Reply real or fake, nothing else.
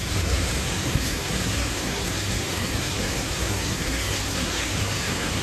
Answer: fake